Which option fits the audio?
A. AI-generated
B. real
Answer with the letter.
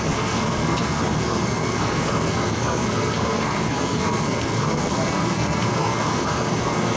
A